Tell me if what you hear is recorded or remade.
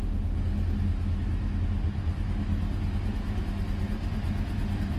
recorded